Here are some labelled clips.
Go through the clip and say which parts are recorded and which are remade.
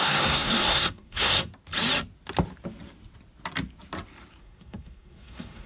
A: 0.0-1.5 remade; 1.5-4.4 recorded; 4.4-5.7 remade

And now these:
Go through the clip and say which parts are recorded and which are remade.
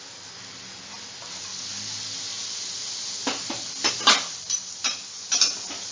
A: 0.0-5.9 recorded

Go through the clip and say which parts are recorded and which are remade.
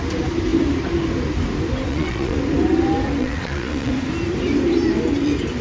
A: 0.0-1.9 recorded; 1.9-2.4 remade; 2.4-3.2 recorded; 3.2-3.9 remade; 3.9-5.6 recorded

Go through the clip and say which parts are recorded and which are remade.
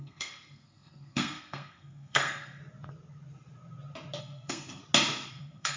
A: 0.0-2.6 remade; 2.6-4.2 recorded; 4.2-4.8 remade; 4.8-5.3 recorded; 5.3-5.8 remade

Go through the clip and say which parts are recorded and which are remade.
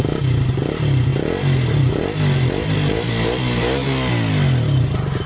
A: 0.0-5.3 recorded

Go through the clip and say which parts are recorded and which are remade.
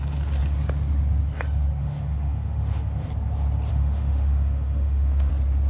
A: 0.0-1.8 recorded; 1.8-3.1 remade; 3.1-3.7 recorded; 3.7-5.3 remade; 5.3-5.7 recorded